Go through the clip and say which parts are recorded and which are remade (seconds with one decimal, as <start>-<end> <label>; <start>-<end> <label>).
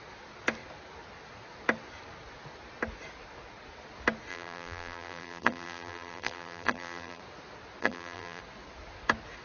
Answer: 0.0-4.3 recorded; 4.3-7.2 remade; 7.2-7.8 recorded; 7.8-8.4 remade; 8.4-9.4 recorded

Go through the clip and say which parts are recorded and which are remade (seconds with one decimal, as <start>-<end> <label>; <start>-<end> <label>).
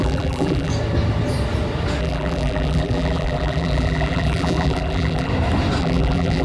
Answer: 0.0-0.7 remade; 0.7-2.0 recorded; 2.0-5.3 remade; 5.3-5.8 recorded; 5.8-6.4 remade